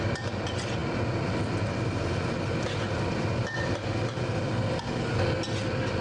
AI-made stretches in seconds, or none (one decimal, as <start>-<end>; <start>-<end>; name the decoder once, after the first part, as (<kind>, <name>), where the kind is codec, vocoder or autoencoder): none